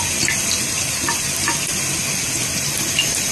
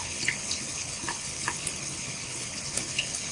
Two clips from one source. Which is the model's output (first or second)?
second